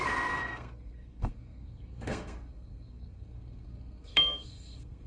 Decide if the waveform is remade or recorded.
remade